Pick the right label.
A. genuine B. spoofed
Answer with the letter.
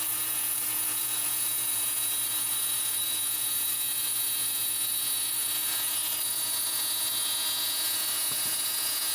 B